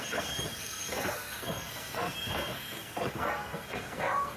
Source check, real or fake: fake